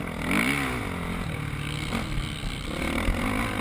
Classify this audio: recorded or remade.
recorded